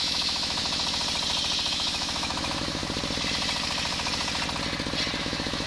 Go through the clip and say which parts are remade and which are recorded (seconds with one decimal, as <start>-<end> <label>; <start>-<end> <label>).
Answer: 0.0-0.6 remade; 0.6-1.7 recorded; 1.7-2.8 remade; 2.8-5.2 recorded; 5.2-5.7 remade